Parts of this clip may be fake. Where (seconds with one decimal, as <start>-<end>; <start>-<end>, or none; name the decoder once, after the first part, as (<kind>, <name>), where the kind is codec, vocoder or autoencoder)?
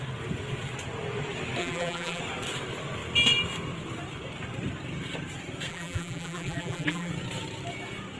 1.6-2.2 (vocoder, BigVGAN v2); 5.7-7.1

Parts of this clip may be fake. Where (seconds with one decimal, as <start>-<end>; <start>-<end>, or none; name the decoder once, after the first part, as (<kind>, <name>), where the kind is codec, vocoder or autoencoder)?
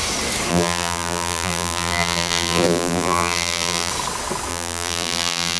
0.5-3.9 (vocoder, BigVGAN v2); 4.5-5.6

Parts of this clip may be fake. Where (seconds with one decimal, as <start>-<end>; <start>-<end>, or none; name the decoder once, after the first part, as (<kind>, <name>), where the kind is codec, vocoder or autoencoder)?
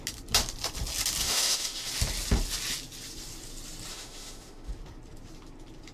1.2-1.9 (autoencoder, DAC-VAE); 3.9-4.7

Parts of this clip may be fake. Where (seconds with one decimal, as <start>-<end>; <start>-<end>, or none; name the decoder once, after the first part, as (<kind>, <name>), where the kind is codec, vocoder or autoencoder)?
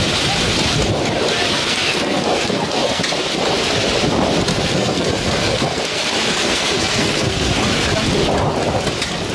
1.5-3.0 (codec, SNAC); 4.5-7.5